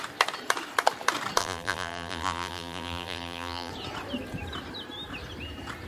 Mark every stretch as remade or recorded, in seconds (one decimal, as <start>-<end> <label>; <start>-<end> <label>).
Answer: 0.0-1.4 recorded; 1.4-3.7 remade; 3.7-5.9 recorded